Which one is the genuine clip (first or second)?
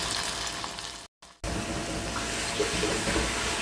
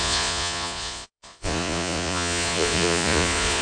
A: first